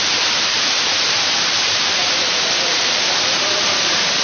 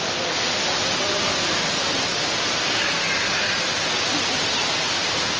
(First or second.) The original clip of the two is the second